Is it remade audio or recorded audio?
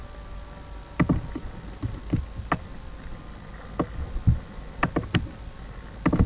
recorded